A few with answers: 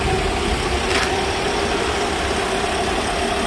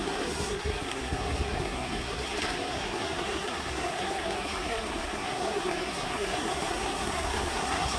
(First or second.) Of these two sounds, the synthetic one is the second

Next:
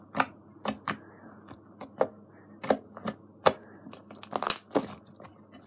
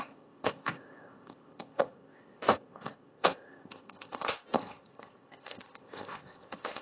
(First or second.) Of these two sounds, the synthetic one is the second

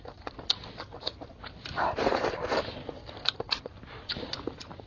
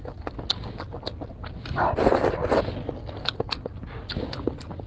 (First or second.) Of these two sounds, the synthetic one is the first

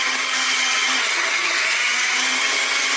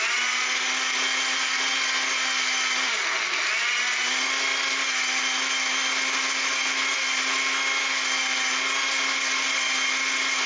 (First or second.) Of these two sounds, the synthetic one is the first